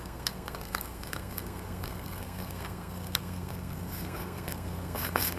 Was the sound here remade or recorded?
remade